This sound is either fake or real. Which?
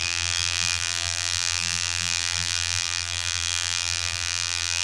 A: fake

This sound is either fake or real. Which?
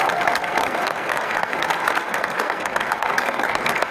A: fake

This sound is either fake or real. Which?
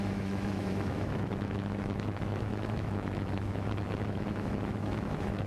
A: fake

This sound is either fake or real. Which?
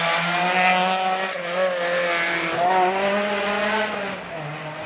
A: real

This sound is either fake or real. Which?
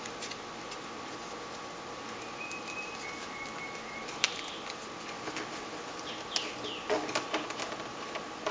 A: real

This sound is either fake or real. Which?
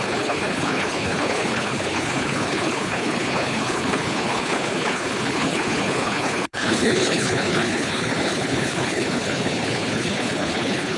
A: fake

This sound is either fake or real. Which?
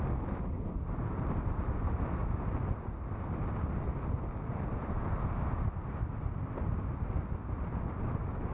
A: real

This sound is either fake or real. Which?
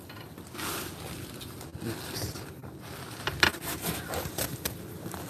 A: real